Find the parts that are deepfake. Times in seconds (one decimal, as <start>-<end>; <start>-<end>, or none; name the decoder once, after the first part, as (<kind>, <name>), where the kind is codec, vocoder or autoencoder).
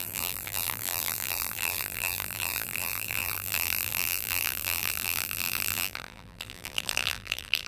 0.0-7.7 (vocoder, BigVGAN v2)